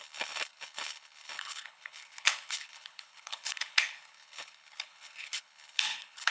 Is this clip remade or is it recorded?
remade